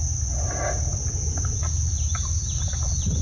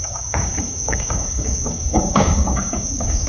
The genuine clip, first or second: first